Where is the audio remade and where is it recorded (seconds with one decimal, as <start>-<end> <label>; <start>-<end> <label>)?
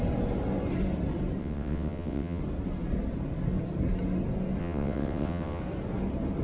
0.0-1.4 recorded; 1.4-2.4 remade; 2.4-4.6 recorded; 4.6-5.6 remade; 5.6-6.4 recorded